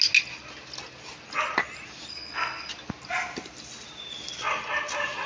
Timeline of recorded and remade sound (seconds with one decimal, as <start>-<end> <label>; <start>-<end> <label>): 0.0-2.1 recorded; 2.1-2.7 remade; 2.7-5.3 recorded